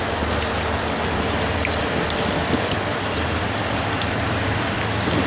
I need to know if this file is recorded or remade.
remade